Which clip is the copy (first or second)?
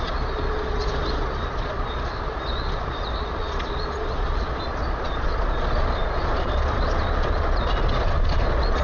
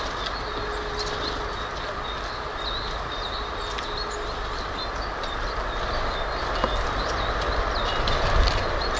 first